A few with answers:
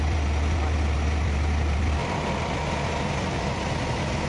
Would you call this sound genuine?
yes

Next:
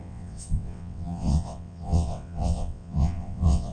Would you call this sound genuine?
no